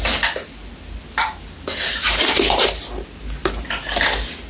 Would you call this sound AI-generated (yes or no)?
no